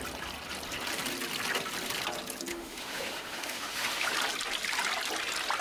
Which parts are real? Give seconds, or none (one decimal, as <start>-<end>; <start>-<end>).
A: 0.0-2.5; 4.1-5.6